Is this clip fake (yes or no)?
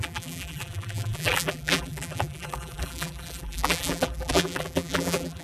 yes